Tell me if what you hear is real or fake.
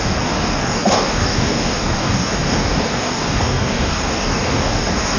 fake